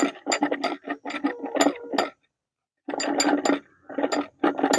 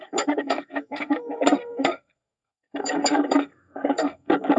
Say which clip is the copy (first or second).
second